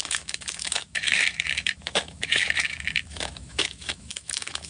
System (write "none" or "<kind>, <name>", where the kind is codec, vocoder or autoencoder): autoencoder, DAC-VAE